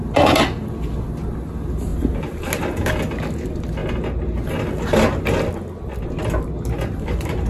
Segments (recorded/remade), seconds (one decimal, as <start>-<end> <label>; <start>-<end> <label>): 0.0-7.5 recorded